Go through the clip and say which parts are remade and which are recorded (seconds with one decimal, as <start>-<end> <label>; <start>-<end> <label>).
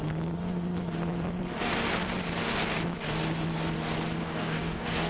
0.0-4.2 recorded; 4.2-5.1 remade